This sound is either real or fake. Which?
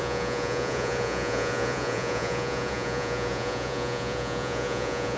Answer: fake